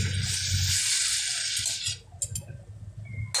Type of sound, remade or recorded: recorded